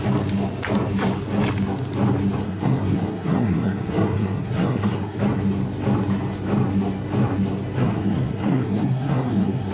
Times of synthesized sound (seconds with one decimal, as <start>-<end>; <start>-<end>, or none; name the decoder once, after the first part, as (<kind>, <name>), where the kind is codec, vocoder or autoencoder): 2.4-5.2 (codec, SNAC); 7.8-9.7